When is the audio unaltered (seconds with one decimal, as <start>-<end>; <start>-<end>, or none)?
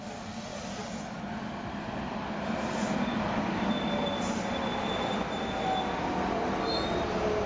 0.0-7.5